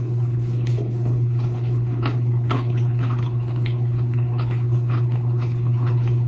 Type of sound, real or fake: fake